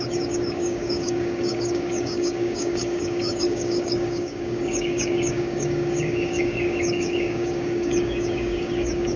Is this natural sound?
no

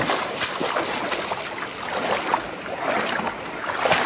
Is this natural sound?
yes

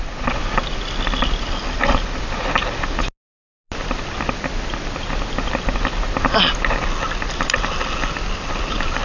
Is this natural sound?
yes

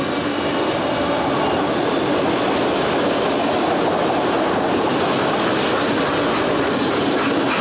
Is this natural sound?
yes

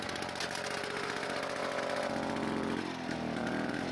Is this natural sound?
yes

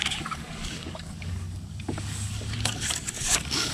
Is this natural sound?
no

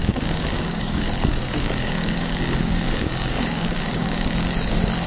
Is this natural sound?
no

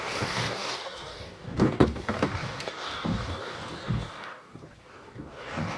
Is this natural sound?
no